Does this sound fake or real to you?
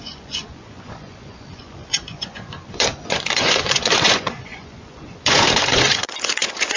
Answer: fake